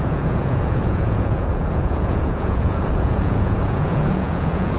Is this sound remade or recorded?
remade